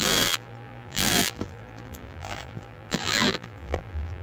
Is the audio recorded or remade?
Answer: remade